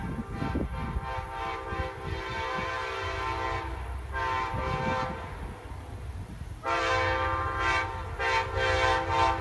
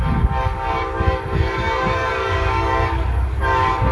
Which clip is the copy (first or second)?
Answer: second